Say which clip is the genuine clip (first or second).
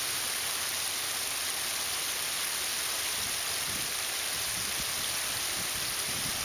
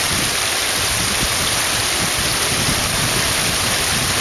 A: first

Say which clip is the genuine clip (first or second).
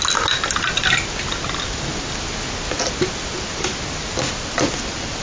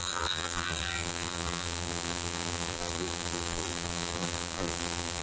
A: first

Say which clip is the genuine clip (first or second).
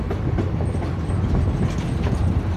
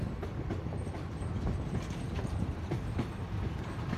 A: first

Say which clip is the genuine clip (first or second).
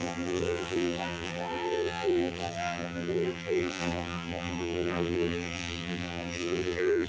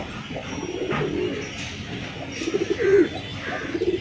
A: second